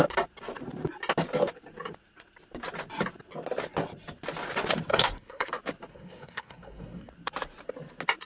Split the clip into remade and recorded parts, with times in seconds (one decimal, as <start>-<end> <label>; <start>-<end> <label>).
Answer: 0.0-4.9 recorded; 4.9-5.5 remade; 5.5-5.9 recorded; 5.9-7.1 remade; 7.1-8.3 recorded